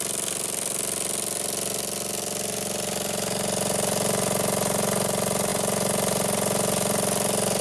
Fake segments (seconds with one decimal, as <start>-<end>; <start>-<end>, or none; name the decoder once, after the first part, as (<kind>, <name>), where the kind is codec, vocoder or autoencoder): none